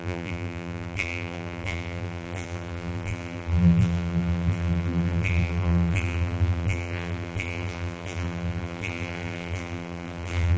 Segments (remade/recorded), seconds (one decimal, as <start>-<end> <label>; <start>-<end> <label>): 0.0-10.6 remade